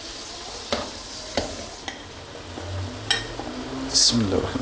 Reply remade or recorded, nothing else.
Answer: recorded